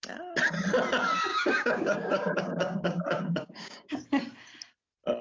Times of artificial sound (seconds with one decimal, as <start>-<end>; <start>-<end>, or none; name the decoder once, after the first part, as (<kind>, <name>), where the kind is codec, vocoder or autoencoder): 1.3-4.0 (codec, DAC)